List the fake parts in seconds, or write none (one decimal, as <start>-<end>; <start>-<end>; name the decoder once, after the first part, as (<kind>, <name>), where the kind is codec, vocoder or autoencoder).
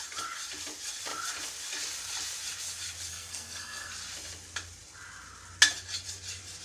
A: 3.1-3.9 (codec, SNAC)